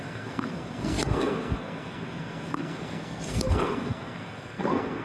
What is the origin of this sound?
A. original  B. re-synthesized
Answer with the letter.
B